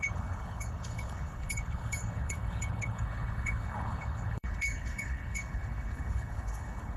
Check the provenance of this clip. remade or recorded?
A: remade